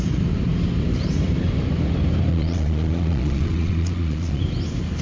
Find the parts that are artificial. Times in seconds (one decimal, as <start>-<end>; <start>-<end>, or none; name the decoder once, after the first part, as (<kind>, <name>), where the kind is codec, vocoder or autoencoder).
2.3-4.4 (vocoder, Vocos)